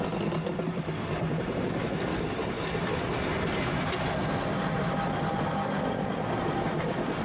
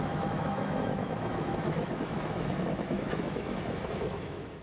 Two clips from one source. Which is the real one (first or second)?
first